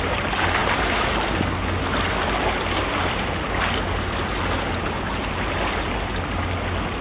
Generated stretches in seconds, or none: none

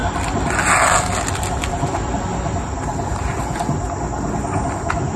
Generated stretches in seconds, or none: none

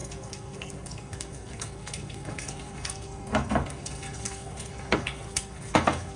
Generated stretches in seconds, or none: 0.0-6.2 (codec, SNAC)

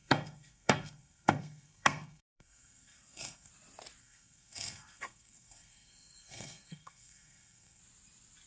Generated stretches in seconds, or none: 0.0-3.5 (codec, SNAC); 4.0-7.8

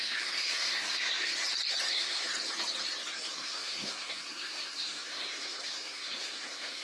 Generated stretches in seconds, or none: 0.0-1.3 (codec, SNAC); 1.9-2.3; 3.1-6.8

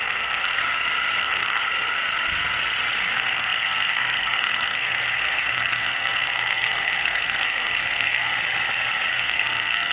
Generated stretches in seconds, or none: 0.0-0.6 (codec, SNAC); 1.2-1.7; 3.1-8.3; 9.1-9.9